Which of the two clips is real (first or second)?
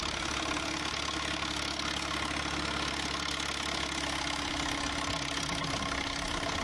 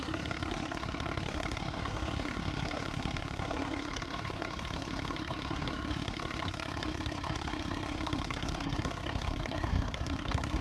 first